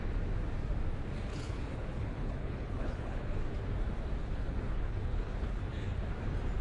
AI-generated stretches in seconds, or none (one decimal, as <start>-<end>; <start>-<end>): 1.3-3.5; 4.2-5.6